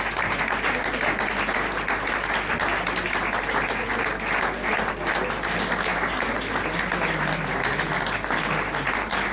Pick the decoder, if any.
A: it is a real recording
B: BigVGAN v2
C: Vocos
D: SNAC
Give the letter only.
A